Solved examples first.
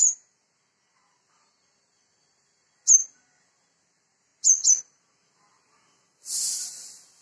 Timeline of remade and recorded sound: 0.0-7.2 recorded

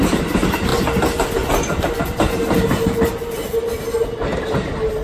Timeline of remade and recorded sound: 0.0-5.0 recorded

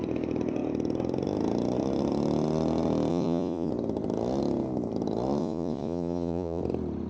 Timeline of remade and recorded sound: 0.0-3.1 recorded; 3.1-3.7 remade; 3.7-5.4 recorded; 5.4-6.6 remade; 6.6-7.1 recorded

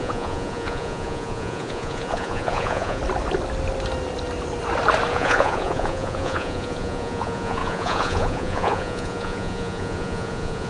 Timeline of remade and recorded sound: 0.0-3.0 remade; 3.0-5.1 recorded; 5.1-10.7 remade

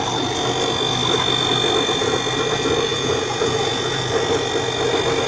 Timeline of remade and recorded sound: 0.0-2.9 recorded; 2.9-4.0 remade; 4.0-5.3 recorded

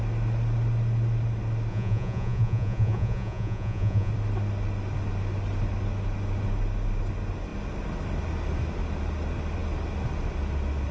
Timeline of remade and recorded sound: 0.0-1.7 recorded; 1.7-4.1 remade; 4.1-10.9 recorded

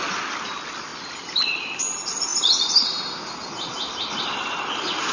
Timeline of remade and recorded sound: 0.0-5.1 recorded